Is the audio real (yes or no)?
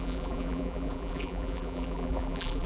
no